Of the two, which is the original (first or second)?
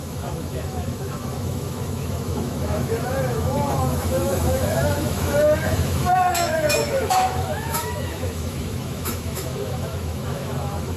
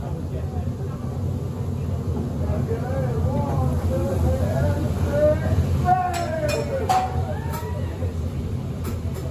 second